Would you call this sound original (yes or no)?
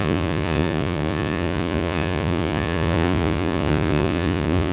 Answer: no